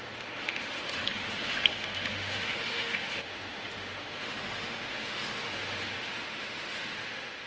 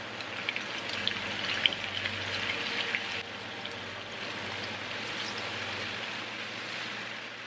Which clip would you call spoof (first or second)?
first